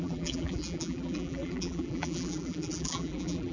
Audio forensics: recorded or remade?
remade